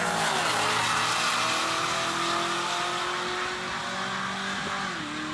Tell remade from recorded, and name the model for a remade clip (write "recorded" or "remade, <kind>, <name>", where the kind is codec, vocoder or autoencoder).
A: recorded